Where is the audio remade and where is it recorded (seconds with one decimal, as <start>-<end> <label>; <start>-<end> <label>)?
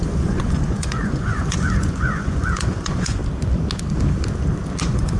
0.0-3.2 remade; 3.2-4.8 recorded; 4.8-5.2 remade